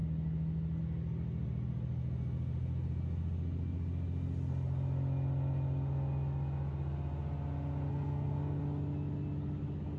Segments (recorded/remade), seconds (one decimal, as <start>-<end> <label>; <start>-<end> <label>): 0.0-7.9 recorded; 7.9-8.6 remade; 8.6-10.0 recorded